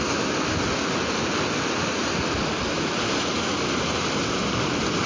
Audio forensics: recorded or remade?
recorded